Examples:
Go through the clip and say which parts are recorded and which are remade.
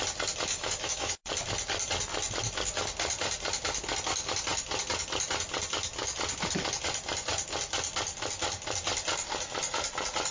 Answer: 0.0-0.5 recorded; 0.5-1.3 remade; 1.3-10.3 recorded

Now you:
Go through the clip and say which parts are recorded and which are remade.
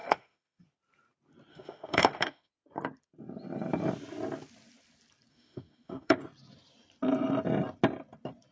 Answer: 0.0-0.6 remade; 0.6-1.5 recorded; 1.5-2.5 remade; 2.5-5.3 recorded; 5.3-6.2 remade; 6.2-8.5 recorded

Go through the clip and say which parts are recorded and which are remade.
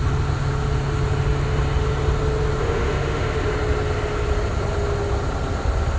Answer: 0.0-2.6 recorded; 2.6-3.5 remade; 3.5-6.0 recorded